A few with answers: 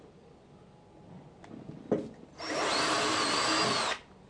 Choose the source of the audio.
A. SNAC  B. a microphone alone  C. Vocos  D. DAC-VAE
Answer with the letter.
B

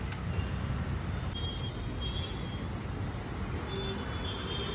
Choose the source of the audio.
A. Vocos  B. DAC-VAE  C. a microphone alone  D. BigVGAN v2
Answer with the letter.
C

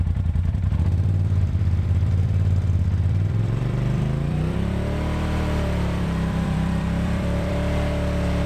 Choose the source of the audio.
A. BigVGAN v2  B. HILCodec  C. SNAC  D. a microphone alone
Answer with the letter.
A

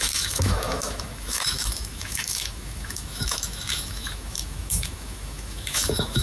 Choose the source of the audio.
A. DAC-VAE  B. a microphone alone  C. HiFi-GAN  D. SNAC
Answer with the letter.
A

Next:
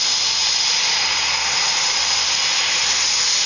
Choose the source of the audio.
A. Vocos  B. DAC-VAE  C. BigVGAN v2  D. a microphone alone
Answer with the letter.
D